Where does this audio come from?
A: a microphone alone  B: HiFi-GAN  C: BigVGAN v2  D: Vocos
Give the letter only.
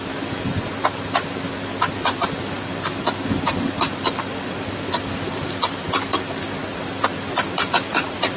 C